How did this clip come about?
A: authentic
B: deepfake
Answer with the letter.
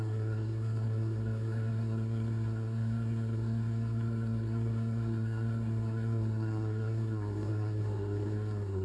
B